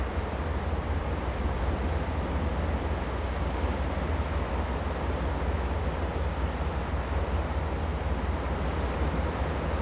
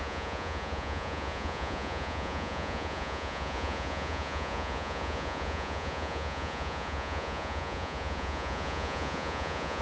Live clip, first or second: first